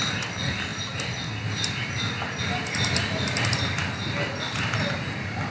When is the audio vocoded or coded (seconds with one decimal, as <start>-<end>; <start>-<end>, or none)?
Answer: none